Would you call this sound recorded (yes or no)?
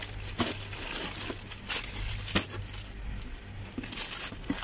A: yes